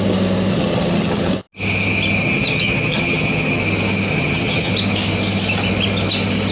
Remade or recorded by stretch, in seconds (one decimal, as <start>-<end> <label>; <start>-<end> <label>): 0.0-0.5 recorded; 0.5-1.3 remade; 1.3-2.2 recorded; 2.2-3.6 remade; 3.6-4.1 recorded; 4.1-4.7 remade; 4.7-6.5 recorded